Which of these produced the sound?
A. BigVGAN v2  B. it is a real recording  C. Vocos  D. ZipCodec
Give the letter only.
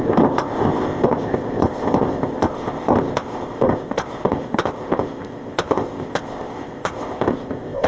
D